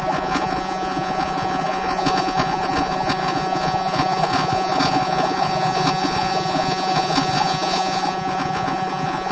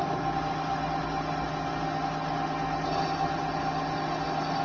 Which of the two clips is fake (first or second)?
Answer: first